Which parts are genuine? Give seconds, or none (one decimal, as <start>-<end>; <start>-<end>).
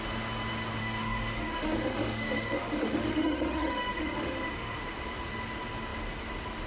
0.0-0.8; 4.8-6.7